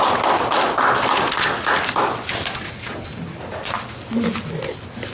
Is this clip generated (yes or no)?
no